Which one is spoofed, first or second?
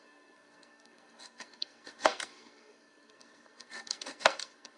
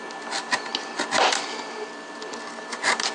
first